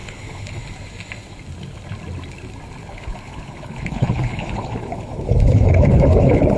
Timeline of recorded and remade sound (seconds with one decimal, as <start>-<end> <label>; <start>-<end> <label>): 0.0-0.6 remade; 0.6-2.8 recorded; 2.8-6.6 remade